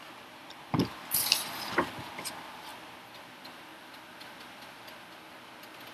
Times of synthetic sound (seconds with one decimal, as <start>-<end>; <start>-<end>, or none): none